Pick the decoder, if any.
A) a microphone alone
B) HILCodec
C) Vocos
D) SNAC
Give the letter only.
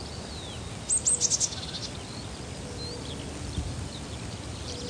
A